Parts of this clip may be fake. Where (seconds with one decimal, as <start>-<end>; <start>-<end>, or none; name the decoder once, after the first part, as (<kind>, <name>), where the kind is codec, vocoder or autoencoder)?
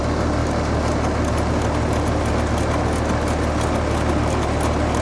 none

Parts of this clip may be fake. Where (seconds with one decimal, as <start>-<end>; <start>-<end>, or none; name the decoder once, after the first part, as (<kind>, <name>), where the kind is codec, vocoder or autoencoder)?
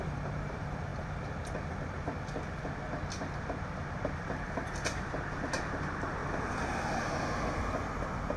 0.0-0.9 (vocoder, BigVGAN v2); 4.1-6.2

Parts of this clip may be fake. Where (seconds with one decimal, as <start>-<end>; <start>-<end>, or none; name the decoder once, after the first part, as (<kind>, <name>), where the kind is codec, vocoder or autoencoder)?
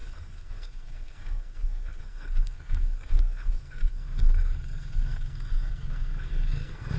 0.0-7.0 (codec, SNAC)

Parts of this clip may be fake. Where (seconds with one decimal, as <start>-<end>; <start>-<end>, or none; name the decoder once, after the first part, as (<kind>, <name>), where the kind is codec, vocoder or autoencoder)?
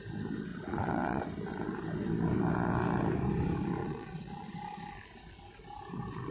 0.5-1.2 (vocoder, Vocos); 3.8-4.5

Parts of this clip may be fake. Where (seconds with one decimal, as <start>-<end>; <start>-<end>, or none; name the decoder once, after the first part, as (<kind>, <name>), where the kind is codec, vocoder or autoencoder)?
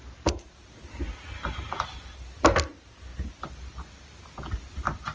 none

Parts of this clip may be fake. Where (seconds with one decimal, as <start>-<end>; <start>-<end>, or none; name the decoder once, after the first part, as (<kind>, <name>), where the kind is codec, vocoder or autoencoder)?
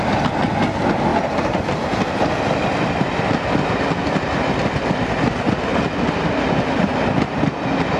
none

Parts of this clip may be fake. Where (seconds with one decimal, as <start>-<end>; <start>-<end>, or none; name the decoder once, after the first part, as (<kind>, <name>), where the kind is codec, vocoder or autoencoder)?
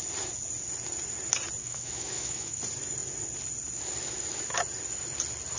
1.6-2.6 (autoencoder, DAC-VAE)